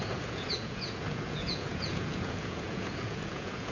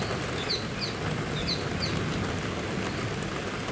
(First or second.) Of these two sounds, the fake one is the first